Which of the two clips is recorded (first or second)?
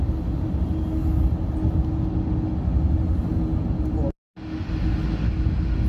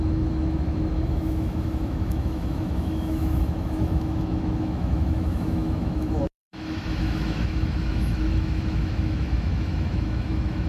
first